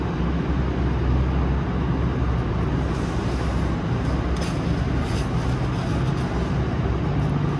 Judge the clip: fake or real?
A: real